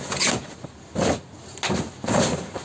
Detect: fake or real real